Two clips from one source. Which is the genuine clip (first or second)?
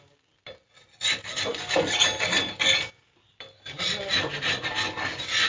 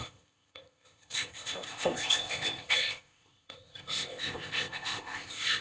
first